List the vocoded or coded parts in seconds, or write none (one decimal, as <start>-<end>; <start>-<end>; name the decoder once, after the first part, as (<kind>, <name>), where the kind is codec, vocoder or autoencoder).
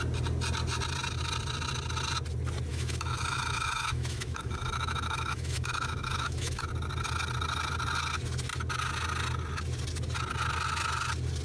2.7-6.7 (autoencoder, DAC-VAE)